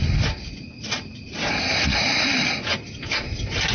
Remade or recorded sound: recorded